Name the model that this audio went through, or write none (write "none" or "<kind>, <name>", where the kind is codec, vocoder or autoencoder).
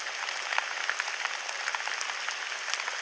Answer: none